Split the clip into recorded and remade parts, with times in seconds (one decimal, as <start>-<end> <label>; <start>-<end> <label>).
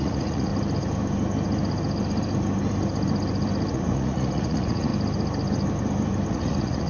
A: 0.0-0.5 remade; 0.5-3.7 recorded; 3.7-4.9 remade; 4.9-6.3 recorded; 6.3-6.9 remade